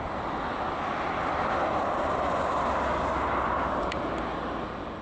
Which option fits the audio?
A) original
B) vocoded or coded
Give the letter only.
A